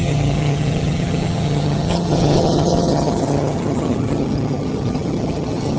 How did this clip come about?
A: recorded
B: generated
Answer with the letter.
B